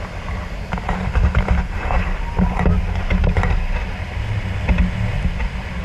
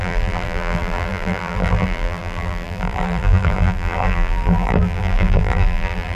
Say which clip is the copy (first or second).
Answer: second